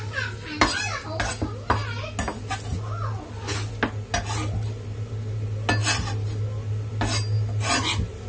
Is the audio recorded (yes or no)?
yes